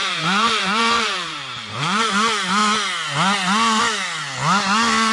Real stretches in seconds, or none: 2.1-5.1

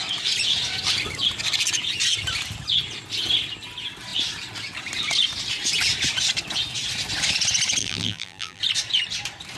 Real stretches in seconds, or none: 0.0-7.8; 8.6-9.6

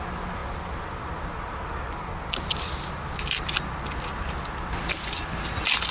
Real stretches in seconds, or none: 0.0-5.9

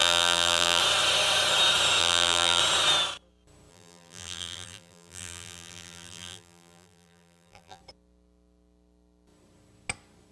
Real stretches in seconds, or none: 0.8-2.0; 2.6-3.7; 7.8-10.3

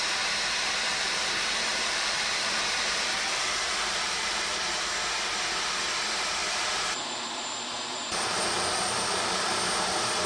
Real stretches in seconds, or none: 0.0-0.9; 4.6-6.4; 9.6-10.3

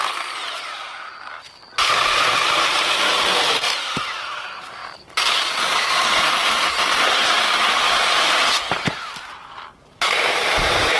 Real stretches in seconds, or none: none

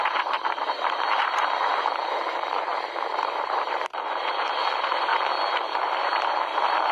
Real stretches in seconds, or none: 5.1-5.6